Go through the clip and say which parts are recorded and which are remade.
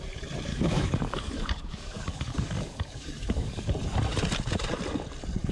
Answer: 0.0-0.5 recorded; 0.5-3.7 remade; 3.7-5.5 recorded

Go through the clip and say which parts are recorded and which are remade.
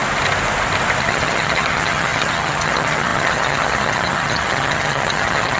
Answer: 0.0-1.0 recorded; 1.0-5.6 remade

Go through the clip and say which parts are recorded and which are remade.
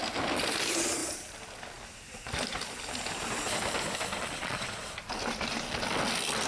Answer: 0.0-4.2 recorded; 4.2-4.8 remade; 4.8-6.5 recorded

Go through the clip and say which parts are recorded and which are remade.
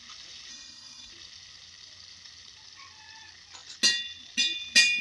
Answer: 0.0-0.5 recorded; 0.5-1.1 remade; 1.1-5.0 recorded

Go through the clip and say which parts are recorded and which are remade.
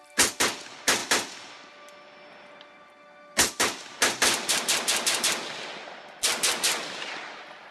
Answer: 0.0-7.7 recorded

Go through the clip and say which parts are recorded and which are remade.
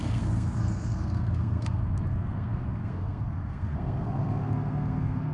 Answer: 0.0-5.3 remade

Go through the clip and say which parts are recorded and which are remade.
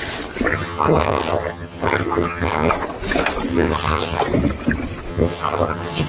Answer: 0.0-0.5 recorded; 0.5-2.7 remade; 2.7-3.5 recorded; 3.5-4.2 remade; 4.2-5.1 recorded; 5.1-6.1 remade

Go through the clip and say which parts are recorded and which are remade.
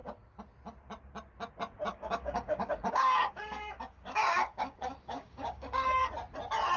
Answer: 0.0-1.9 recorded; 1.9-6.0 remade; 6.0-6.8 recorded